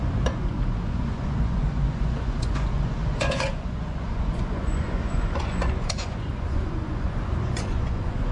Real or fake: fake